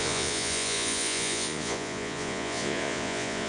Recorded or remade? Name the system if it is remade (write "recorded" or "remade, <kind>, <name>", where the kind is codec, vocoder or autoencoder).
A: remade, vocoder, Vocos